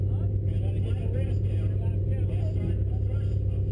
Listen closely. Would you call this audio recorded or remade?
recorded